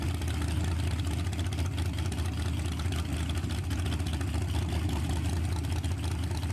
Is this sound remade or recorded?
recorded